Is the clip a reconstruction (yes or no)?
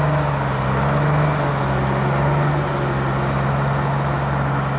no